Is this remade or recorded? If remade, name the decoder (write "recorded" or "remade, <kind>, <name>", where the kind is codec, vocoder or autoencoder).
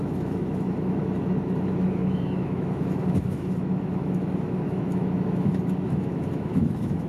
remade, autoencoder, DAC-VAE